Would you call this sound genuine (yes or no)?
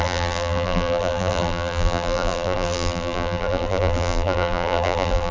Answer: no